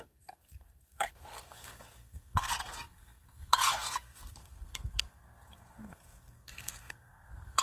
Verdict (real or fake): fake